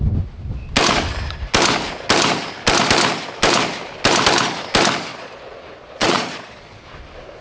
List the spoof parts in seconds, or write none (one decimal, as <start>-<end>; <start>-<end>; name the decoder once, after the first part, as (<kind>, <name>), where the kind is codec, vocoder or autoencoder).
5.1-6.8 (vocoder, Vocos)